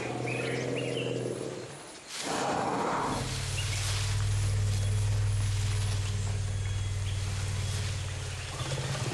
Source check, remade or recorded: recorded